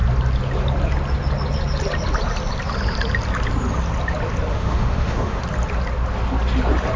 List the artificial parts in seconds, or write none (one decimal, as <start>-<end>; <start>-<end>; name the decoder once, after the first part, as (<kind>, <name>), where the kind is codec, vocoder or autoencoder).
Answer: 4.5-5.4 (autoencoder, DAC-VAE)